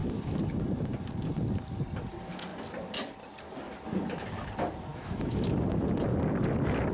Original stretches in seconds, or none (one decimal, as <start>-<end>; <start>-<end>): 0.0-4.9; 5.5-6.9